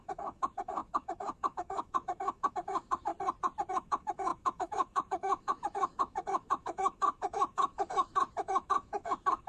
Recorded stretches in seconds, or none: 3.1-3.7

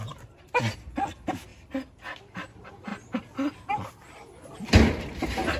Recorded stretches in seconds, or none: 0.0-5.6